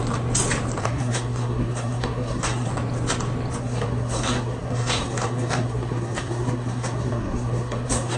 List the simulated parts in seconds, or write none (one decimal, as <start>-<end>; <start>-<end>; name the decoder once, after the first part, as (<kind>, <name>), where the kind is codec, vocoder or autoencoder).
0.8-2.7 (codec, SNAC); 3.6-8.2